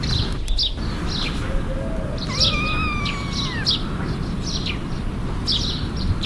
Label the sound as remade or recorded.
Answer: recorded